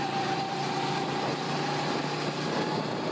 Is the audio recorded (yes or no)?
yes